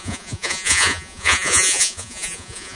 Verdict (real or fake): fake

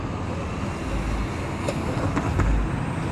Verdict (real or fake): real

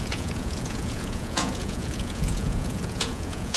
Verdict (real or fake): fake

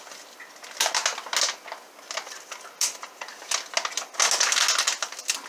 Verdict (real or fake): real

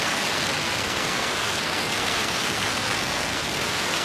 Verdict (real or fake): fake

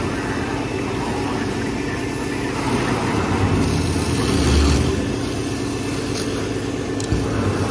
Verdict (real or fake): real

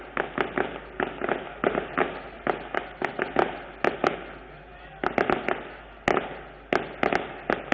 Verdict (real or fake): real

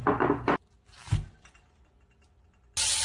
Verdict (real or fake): real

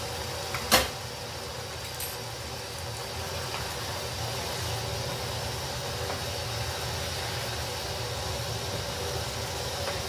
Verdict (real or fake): real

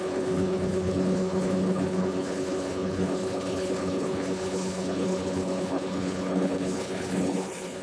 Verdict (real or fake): fake